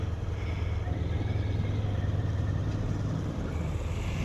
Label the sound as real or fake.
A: real